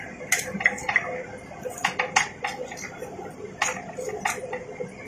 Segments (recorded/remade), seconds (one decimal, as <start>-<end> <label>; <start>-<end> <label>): 0.0-1.8 recorded; 1.8-5.1 remade